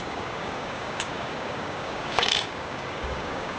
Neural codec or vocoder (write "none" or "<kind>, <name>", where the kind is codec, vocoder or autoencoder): codec, DAC